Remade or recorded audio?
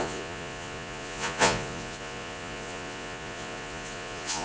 remade